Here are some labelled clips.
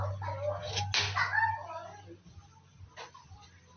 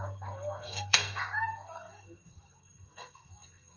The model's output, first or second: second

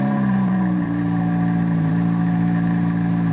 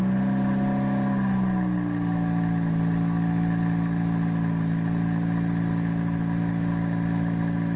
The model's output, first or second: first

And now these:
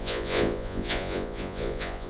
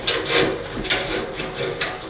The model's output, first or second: first